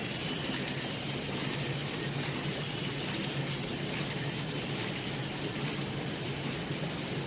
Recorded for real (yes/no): yes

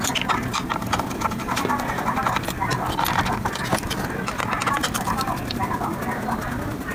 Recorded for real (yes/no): yes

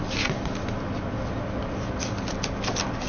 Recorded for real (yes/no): yes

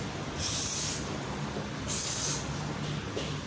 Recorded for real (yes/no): yes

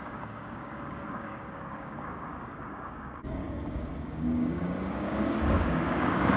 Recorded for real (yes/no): no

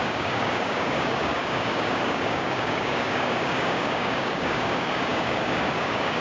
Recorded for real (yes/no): no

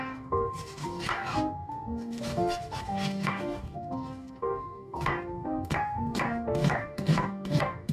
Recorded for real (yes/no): no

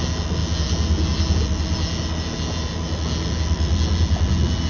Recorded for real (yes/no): yes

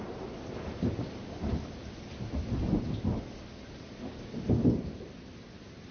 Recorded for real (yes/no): yes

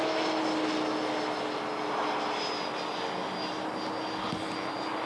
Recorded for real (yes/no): yes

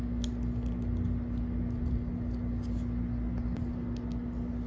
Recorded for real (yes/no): yes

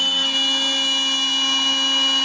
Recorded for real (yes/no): yes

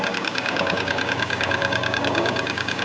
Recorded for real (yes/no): no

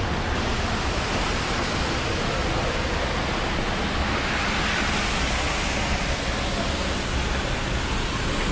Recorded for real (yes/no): yes